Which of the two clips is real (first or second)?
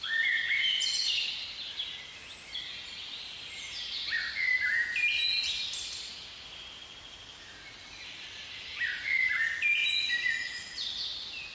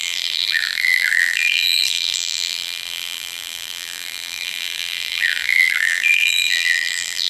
first